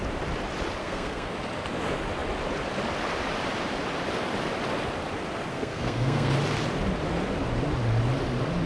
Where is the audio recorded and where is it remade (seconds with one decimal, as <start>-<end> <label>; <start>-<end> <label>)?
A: 0.0-0.8 recorded; 0.8-1.3 remade; 1.3-5.5 recorded; 5.5-6.3 remade; 6.3-8.7 recorded